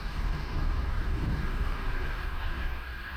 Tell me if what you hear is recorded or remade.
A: remade